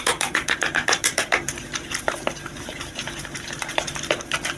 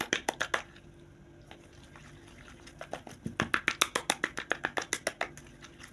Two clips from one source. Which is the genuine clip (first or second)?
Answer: second